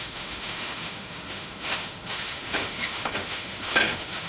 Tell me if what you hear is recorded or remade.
remade